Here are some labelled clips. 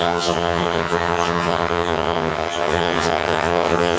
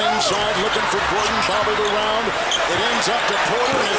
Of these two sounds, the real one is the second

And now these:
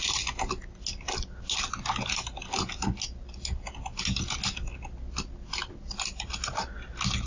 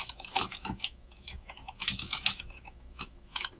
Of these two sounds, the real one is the first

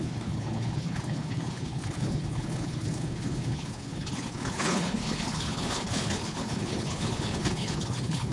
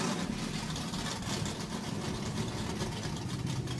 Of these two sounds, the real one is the second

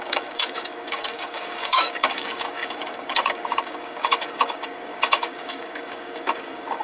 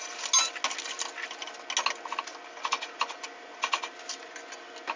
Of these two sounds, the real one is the second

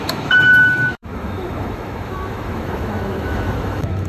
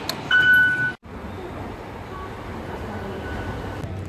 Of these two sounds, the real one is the second